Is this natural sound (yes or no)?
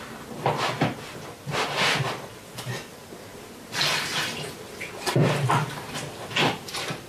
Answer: yes